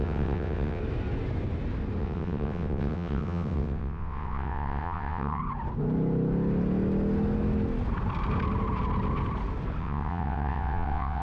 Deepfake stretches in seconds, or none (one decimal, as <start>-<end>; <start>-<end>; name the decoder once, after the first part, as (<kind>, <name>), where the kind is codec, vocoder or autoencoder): 0.0-0.8 (vocoder, WaveNeXt); 2.0-5.4; 9.8-11.2